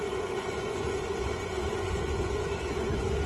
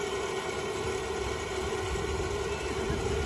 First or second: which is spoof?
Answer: first